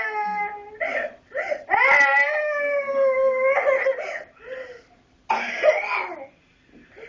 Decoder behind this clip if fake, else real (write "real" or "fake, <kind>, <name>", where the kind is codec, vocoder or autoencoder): real